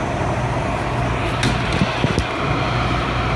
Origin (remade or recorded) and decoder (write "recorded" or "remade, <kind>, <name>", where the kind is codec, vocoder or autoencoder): recorded